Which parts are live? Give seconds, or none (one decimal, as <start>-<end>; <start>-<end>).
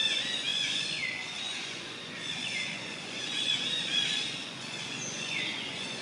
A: none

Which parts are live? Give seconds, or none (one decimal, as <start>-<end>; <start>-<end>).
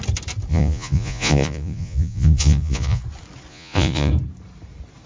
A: 0.0-0.5; 3.0-3.5; 4.1-5.1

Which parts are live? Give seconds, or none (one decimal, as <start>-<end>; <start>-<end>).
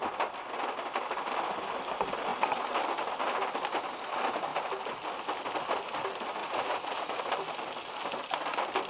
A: 0.0-6.4; 7.2-8.9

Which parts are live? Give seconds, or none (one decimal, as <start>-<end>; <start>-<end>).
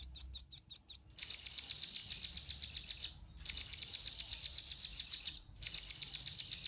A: 0.0-4.9; 5.6-6.7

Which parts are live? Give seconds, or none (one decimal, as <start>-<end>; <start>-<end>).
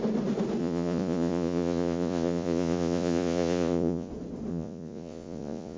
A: 0.0-0.6; 4.1-4.5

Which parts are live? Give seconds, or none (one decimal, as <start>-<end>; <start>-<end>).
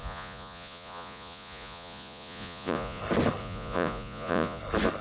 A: 3.0-3.4; 4.6-5.0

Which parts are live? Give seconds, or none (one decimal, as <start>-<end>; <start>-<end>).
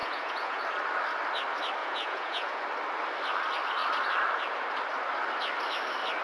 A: 0.6-1.8; 2.6-6.2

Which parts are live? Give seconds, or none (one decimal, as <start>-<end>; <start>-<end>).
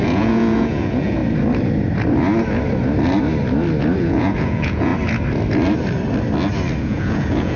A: 1.2-4.0; 4.9-6.8